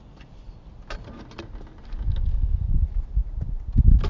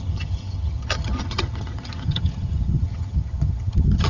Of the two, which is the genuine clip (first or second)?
first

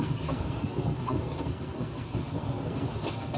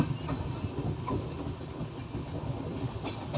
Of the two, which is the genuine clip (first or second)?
second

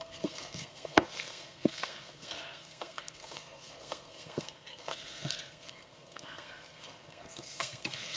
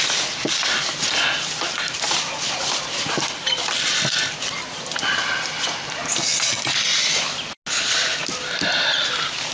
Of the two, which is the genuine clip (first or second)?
second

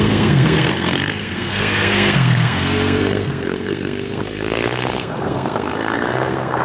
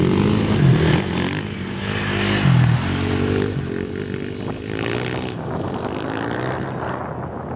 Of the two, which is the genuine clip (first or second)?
second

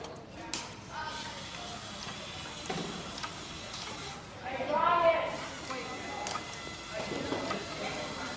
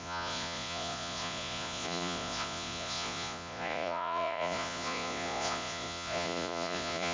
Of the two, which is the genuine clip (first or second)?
first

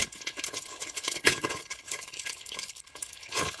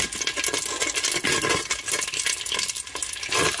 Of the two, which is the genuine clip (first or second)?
second